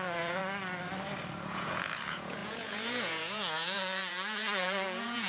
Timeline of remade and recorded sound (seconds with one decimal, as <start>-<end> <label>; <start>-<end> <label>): 0.0-0.4 remade; 0.4-1.5 recorded; 1.5-5.3 remade